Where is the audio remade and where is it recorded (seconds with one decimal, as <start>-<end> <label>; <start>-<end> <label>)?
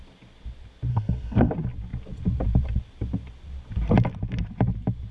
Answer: 0.0-0.9 recorded; 0.9-1.5 remade; 1.5-5.1 recorded